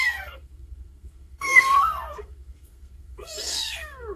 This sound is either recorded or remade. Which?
remade